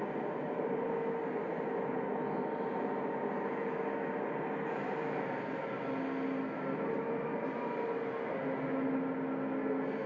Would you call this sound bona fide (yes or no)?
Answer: yes